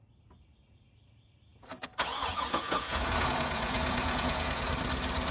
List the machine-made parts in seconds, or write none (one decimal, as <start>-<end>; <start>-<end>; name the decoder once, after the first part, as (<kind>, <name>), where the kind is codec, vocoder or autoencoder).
1.5-4.7 (vocoder, Vocos)